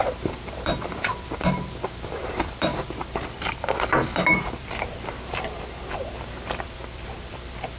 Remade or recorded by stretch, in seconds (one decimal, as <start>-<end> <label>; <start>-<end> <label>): 0.0-7.8 remade